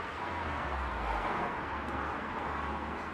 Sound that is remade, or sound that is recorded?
remade